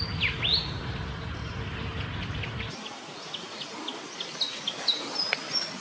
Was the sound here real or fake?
real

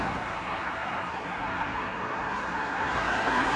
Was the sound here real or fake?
fake